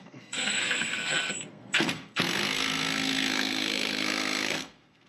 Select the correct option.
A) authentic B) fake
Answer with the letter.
B